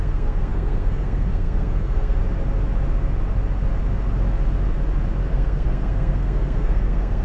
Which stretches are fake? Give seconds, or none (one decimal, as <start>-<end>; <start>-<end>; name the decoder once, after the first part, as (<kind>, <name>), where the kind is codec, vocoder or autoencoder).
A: 0.0-2.2 (codec, SNAC); 5.3-7.2